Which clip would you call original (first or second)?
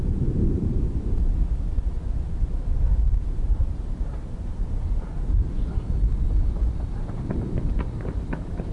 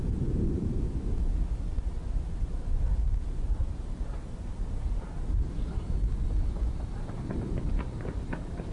second